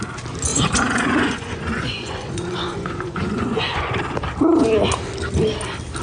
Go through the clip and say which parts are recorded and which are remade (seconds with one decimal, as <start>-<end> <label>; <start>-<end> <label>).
0.0-0.5 recorded; 0.5-3.9 remade; 3.9-6.0 recorded